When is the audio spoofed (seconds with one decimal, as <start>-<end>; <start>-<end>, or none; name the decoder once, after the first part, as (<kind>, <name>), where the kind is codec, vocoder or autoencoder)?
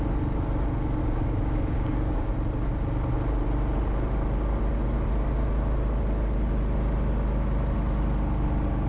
1.0-2.3 (codec, DAC)